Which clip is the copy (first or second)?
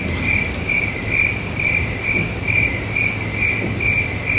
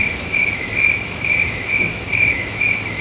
second